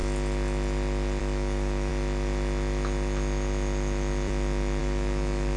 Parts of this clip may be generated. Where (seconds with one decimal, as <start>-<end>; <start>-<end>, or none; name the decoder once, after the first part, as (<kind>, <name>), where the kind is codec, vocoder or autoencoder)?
1.2-1.9 (autoencoder, DAC-VAE); 4.8-5.6